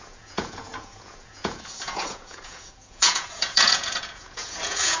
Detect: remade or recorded remade